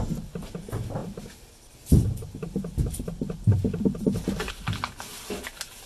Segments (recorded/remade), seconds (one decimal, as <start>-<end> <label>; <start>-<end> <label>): 0.0-5.9 recorded